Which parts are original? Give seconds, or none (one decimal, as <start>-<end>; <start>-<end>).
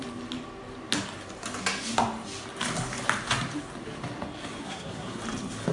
0.0-4.6; 5.2-5.7